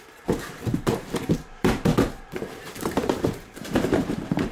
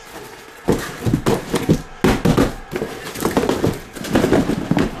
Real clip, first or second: second